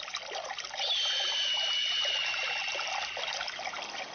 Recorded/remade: recorded